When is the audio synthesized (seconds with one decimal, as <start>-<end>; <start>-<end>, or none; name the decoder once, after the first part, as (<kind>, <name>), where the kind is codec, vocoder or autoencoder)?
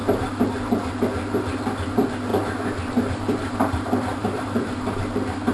2.3-5.1 (vocoder, BigVGAN v2)